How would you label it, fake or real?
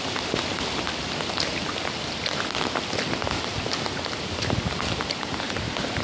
real